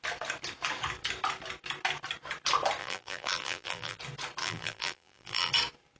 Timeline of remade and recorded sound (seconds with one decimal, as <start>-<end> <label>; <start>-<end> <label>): 0.0-2.8 recorded; 2.8-4.0 remade; 4.0-4.4 recorded; 4.4-5.5 remade; 5.5-6.0 recorded